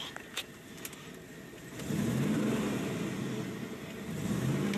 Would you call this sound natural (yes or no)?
yes